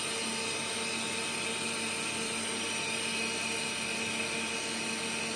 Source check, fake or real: real